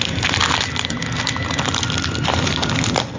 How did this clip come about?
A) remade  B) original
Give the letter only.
B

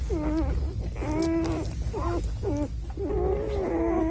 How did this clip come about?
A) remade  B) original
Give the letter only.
B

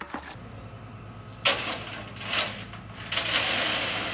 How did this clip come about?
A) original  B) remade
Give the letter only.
A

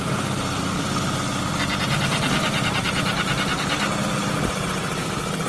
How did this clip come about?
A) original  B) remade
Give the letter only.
A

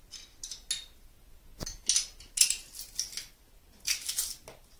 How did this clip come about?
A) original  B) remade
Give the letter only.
A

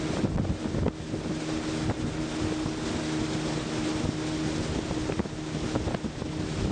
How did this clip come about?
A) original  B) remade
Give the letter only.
A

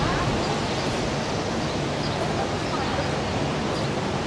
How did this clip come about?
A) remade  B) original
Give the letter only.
B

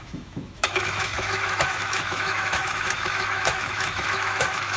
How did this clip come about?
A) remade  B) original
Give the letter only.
A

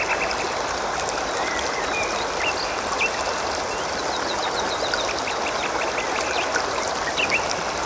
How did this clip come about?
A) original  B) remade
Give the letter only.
A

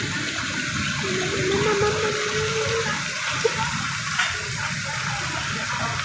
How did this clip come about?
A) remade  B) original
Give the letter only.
B